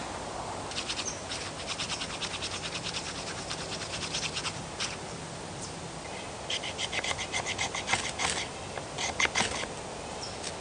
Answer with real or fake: real